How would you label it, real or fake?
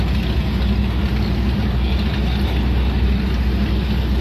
real